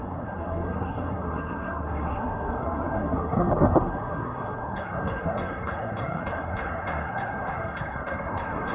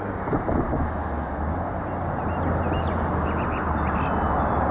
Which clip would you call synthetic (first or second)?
first